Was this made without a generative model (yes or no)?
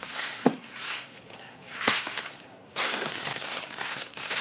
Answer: no